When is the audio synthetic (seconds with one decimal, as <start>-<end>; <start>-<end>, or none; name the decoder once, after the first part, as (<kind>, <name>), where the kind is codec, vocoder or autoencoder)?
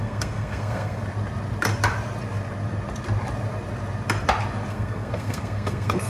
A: 0.0-1.0 (codec, SNAC); 4.7-6.1